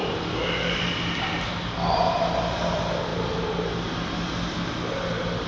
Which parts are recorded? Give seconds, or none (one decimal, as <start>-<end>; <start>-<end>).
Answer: 0.0-5.5